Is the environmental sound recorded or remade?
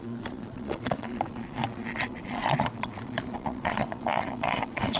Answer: remade